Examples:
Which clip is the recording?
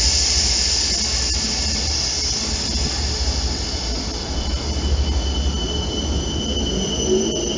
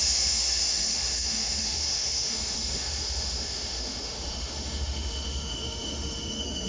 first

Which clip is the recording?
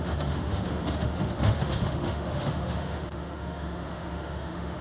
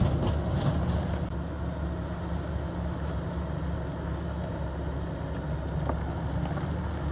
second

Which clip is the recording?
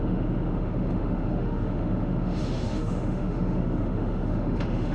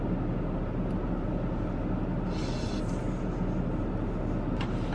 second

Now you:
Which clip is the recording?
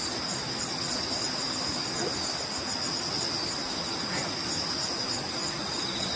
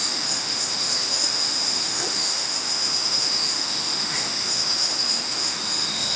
first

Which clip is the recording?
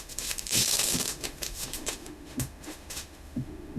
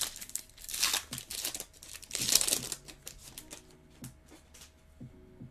second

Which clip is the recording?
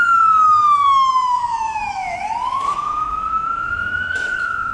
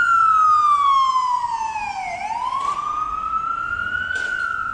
second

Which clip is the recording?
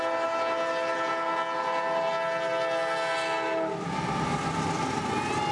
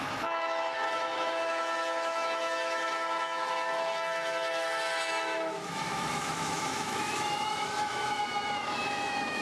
first